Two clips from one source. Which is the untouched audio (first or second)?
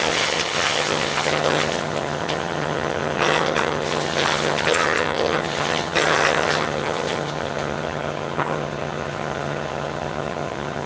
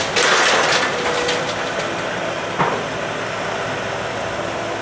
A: second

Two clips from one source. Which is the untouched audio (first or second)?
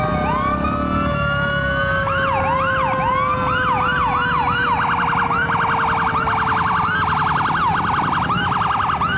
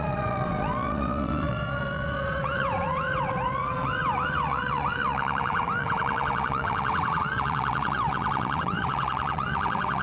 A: first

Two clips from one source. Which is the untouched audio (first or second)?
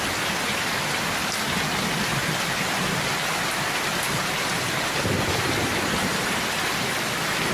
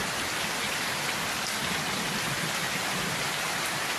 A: first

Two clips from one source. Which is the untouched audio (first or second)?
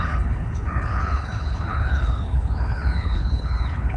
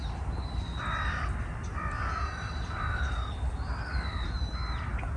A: second